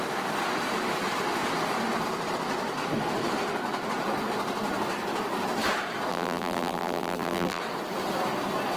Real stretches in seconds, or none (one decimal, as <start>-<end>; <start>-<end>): 0.0-6.1; 7.6-8.8